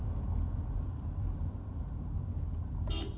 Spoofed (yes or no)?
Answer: no